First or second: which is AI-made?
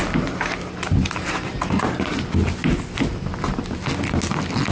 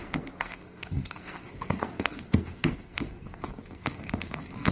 second